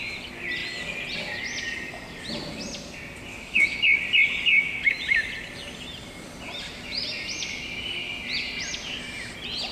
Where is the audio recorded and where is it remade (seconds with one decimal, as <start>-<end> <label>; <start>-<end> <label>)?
0.0-3.3 recorded; 3.3-3.8 remade; 3.8-4.5 recorded; 4.5-5.0 remade; 5.0-9.7 recorded